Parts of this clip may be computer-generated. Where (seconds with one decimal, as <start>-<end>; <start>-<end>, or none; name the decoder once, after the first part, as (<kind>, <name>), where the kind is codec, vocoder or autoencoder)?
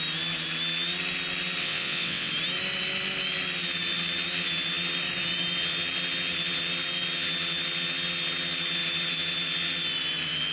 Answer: 1.6-2.3 (vocoder, WaveNeXt)